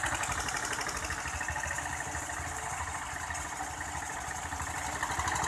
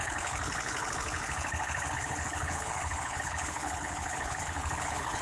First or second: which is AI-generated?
second